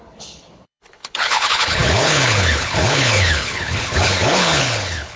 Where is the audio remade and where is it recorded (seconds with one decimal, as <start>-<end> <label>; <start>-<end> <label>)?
0.0-5.2 remade